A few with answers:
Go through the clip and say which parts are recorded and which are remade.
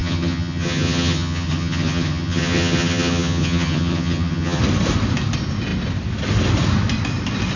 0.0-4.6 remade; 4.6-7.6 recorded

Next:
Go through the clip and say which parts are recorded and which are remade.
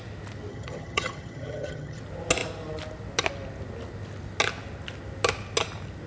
0.0-0.5 recorded; 0.5-2.0 remade; 2.0-6.1 recorded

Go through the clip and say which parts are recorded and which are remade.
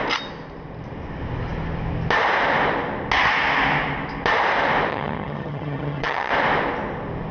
0.0-4.9 recorded; 4.9-6.3 remade; 6.3-7.3 recorded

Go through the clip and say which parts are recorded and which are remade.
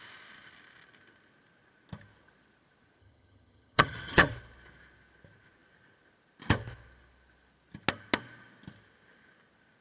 0.0-3.0 recorded; 3.0-4.3 remade; 4.3-9.8 recorded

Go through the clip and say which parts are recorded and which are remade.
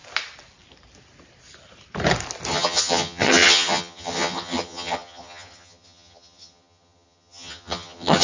0.0-2.5 recorded; 2.5-8.2 remade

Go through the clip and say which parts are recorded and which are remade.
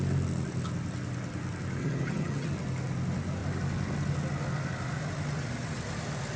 0.0-1.8 recorded; 1.8-2.5 remade; 2.5-6.4 recorded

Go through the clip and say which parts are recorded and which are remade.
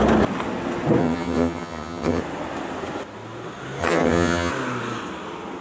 0.0-1.0 recorded; 1.0-2.2 remade; 2.2-3.8 recorded; 3.8-4.5 remade; 4.5-5.6 recorded